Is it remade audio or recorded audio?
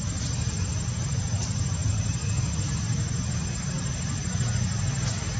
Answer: recorded